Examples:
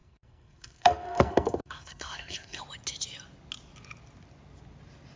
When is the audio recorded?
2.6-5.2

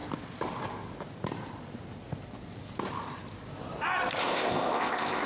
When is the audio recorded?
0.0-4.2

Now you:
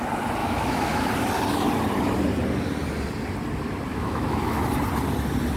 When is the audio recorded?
0.0-0.4; 1.1-3.9; 4.6-5.6